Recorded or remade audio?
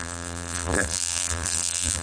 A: remade